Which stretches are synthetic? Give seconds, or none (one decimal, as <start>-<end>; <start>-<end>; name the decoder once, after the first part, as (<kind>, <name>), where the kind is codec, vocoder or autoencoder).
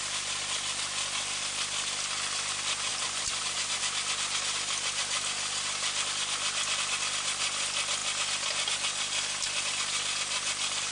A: 2.9-3.8 (vocoder, BigVGAN v2)